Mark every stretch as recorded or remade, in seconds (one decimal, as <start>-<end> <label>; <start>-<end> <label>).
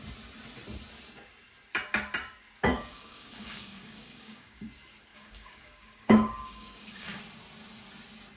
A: 0.0-2.7 recorded; 2.7-4.6 remade; 4.6-5.1 recorded; 5.1-7.2 remade; 7.2-8.4 recorded